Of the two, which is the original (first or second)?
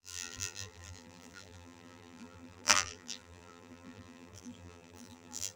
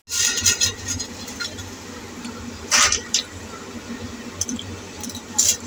second